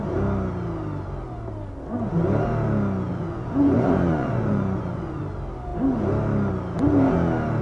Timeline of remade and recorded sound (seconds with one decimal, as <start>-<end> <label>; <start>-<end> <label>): 0.0-3.1 recorded; 3.1-5.2 remade; 5.2-7.6 recorded